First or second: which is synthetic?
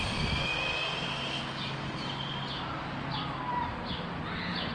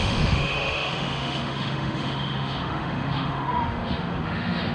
second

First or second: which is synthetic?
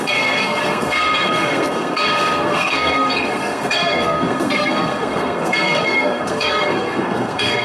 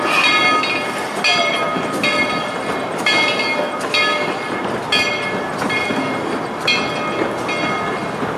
first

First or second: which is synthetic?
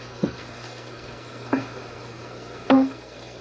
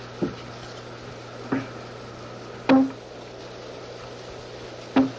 first